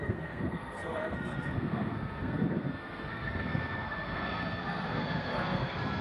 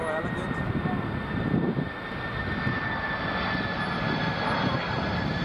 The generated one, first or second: first